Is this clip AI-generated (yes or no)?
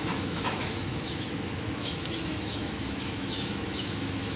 yes